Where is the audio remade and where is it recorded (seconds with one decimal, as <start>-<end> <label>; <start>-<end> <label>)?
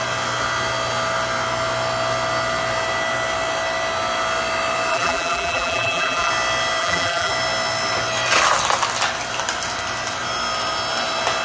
0.0-4.9 recorded; 4.9-6.3 remade; 6.3-6.8 recorded; 6.8-7.3 remade; 7.3-11.4 recorded